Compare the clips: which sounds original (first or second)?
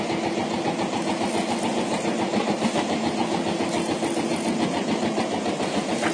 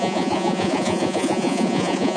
first